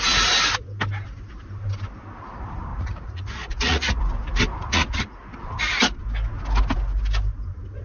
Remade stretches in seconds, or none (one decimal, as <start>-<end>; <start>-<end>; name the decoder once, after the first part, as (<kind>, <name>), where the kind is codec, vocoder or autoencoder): 2.7-4.0 (vocoder, Vocos); 4.6-5.2